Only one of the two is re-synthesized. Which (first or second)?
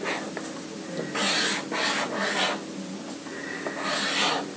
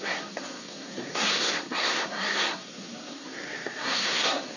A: second